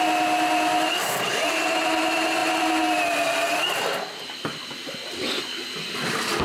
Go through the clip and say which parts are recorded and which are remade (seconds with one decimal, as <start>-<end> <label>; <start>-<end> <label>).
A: 0.0-6.4 recorded